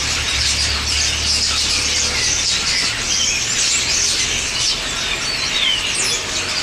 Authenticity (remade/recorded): recorded